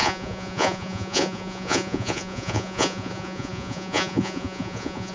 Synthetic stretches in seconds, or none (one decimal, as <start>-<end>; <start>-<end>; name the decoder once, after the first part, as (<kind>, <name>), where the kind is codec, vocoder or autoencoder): 0.0-5.1 (vocoder, Vocos)